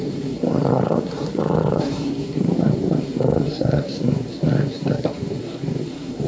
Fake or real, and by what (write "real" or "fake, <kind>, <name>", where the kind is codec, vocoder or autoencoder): fake, codec, SNAC